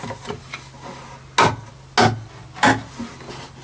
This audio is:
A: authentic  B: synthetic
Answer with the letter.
A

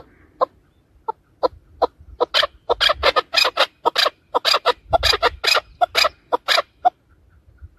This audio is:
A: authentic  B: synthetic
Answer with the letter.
A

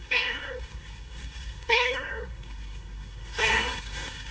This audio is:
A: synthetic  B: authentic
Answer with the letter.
A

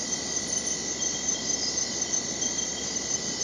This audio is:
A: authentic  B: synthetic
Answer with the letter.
A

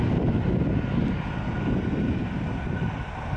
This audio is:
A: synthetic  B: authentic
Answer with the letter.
B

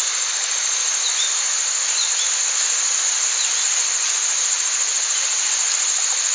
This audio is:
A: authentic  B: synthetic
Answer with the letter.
A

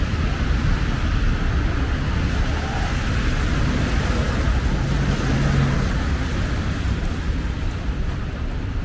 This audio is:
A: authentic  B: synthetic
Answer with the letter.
A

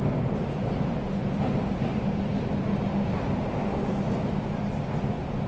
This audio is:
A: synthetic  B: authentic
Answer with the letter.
B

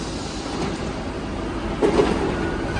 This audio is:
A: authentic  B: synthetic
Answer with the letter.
A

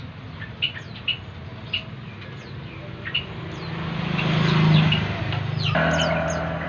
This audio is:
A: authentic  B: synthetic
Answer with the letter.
A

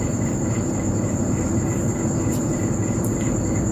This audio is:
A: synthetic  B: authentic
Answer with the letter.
A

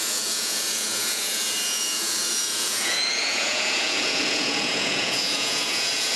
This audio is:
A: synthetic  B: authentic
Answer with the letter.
A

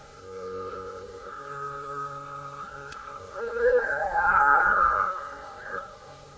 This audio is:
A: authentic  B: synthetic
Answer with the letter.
B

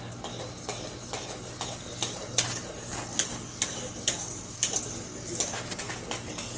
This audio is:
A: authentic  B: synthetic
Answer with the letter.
A